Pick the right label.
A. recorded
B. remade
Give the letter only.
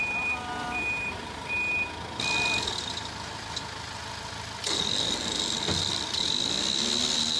A